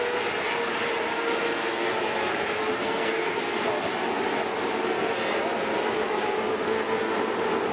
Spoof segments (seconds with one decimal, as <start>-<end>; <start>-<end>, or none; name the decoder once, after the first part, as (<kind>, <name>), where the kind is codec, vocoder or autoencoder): 2.8-3.4 (codec, SNAC)